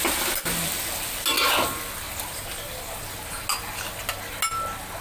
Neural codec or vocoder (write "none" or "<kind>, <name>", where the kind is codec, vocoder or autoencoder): none